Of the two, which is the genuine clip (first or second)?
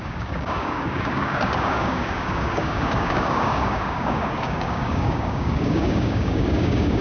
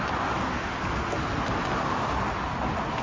second